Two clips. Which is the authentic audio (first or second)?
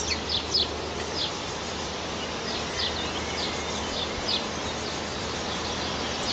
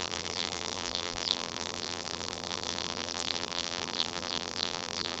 first